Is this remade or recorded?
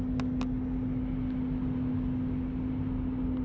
recorded